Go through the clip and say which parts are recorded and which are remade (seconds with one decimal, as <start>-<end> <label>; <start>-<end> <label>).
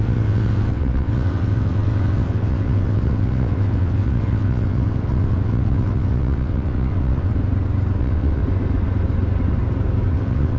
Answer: 0.0-7.3 remade; 7.3-8.0 recorded; 8.0-8.4 remade; 8.4-10.1 recorded; 10.1-10.6 remade